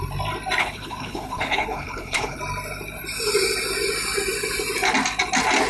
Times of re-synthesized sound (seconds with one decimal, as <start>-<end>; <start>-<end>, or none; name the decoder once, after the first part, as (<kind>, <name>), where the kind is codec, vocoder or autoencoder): 0.6-2.4 (codec, HILCodec)